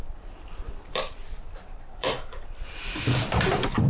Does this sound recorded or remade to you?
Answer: remade